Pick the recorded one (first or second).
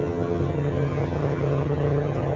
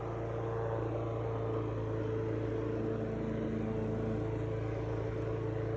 second